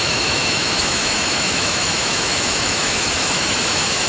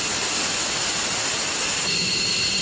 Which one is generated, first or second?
first